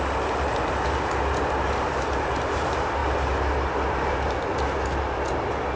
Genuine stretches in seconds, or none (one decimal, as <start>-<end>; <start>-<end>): 0.0-5.8